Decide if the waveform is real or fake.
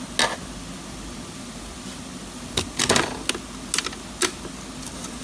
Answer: real